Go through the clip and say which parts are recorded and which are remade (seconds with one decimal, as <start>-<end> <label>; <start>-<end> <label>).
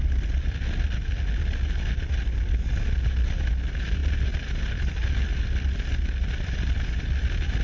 0.0-7.6 recorded